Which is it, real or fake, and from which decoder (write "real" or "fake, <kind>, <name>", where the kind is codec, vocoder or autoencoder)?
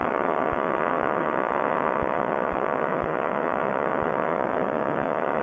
fake, vocoder, WaveNeXt